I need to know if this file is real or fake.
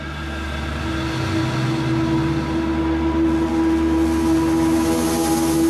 real